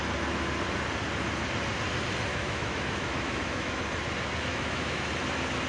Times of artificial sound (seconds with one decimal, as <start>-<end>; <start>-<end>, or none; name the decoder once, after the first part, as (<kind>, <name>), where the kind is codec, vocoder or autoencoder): 2.3-3.8 (autoencoder, DAC-VAE); 4.5-5.1